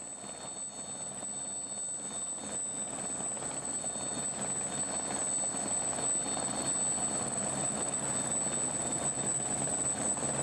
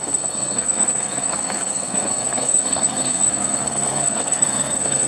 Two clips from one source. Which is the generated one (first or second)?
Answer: second